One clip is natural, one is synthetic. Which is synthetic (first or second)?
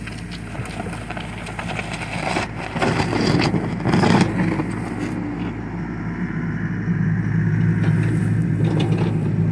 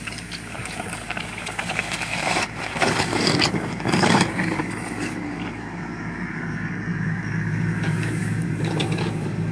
second